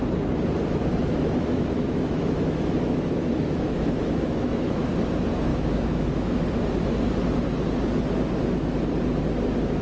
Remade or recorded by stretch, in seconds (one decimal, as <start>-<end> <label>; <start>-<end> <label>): 0.0-1.0 recorded; 1.0-4.9 remade; 4.9-5.5 recorded; 5.5-6.4 remade; 6.4-9.8 recorded